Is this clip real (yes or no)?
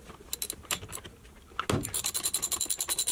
yes